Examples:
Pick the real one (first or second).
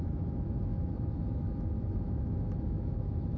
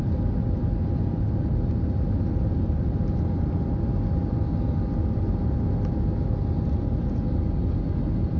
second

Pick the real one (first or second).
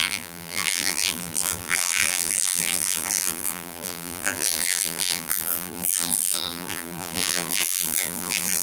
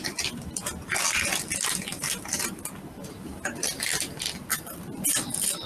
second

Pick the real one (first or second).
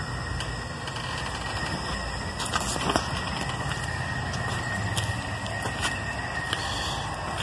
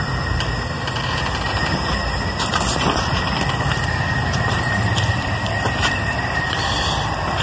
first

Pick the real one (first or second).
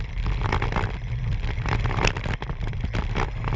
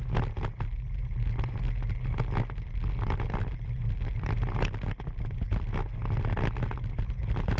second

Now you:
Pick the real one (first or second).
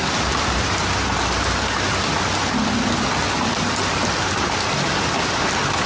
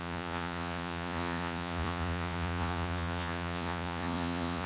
first